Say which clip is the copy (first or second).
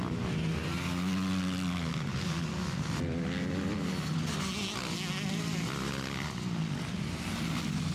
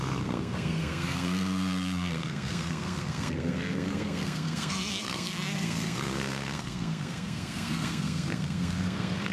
second